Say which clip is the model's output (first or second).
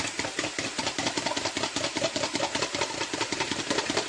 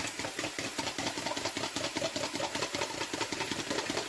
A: first